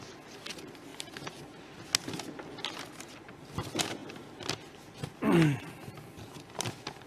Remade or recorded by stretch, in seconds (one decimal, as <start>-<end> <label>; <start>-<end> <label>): 0.0-7.1 recorded